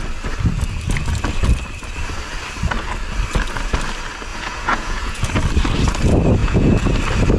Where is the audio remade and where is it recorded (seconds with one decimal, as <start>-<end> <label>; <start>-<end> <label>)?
0.0-4.3 recorded; 4.3-5.3 remade; 5.3-6.4 recorded; 6.4-6.9 remade; 6.9-7.4 recorded